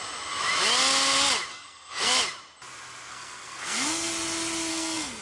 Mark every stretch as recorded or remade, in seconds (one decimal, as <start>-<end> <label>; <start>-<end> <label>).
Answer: 0.0-1.5 recorded; 1.5-2.2 remade; 2.2-3.1 recorded; 3.1-4.1 remade; 4.1-4.7 recorded; 4.7-5.2 remade